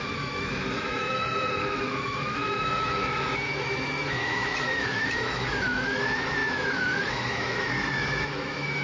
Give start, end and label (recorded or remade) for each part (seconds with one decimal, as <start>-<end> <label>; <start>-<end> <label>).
0.0-8.8 remade